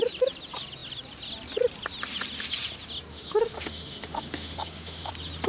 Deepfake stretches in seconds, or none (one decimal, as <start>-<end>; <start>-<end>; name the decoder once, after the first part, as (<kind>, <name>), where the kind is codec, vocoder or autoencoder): 3.1-5.1 (autoencoder, DAC-VAE)